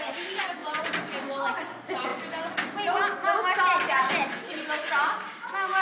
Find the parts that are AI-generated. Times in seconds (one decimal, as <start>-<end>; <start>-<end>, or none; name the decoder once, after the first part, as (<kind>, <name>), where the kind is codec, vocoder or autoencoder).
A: 0.6-1.2 (vocoder, BigVGAN v2)